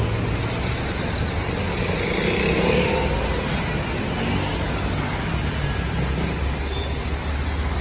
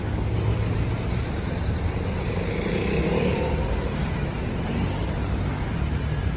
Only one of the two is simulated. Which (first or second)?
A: second